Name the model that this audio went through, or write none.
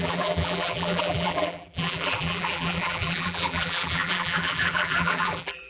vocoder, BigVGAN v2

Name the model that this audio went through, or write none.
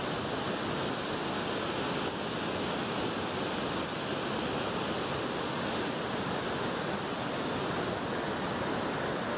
none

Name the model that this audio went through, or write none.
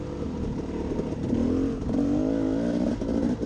none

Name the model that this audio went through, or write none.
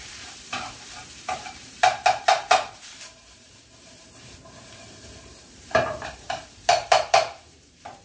vocoder, BigVGAN v2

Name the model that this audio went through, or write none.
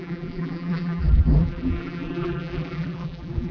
vocoder, BigVGAN v2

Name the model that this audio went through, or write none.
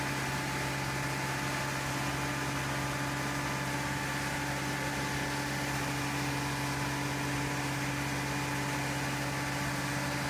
none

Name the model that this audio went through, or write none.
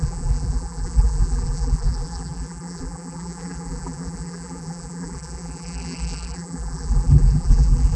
vocoder, BigVGAN v2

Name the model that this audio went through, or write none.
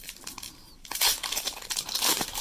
vocoder, BigVGAN v2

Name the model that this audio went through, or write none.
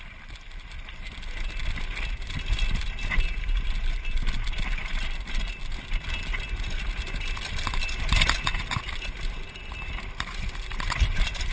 none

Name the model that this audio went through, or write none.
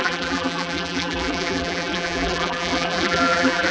vocoder, BigVGAN v2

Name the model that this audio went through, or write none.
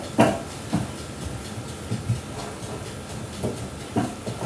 none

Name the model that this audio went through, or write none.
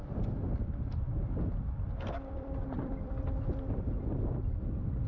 vocoder, BigVGAN v2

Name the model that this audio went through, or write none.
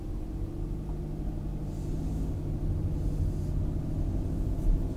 none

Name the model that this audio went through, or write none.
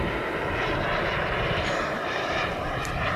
vocoder, BigVGAN v2